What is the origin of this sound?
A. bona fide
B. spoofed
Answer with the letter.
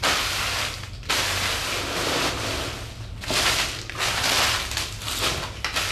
A